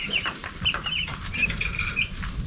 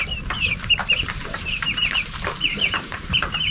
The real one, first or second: first